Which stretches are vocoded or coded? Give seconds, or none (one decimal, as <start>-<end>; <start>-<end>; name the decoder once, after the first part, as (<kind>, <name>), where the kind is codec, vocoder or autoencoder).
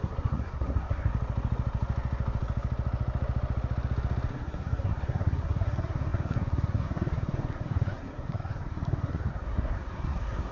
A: 0.0-1.1 (codec, SNAC); 4.3-10.5